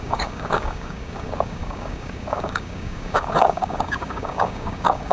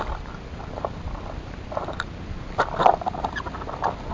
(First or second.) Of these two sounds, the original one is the second